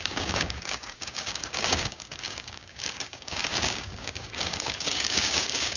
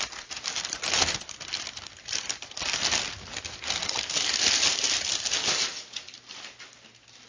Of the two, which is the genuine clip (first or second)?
second